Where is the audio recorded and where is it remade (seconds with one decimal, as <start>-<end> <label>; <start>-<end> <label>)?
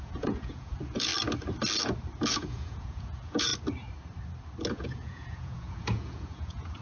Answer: 0.0-1.1 remade; 1.1-2.3 recorded; 2.3-3.5 remade; 3.5-4.7 recorded; 4.7-6.8 remade